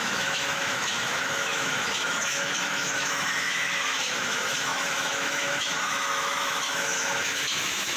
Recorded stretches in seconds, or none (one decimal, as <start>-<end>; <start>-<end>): none